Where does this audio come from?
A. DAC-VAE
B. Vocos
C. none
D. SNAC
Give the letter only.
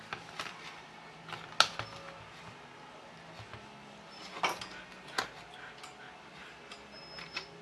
C